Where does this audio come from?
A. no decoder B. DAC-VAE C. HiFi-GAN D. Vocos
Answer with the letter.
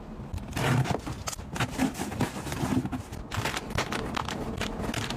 A